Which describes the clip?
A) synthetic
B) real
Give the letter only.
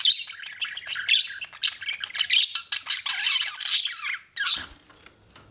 B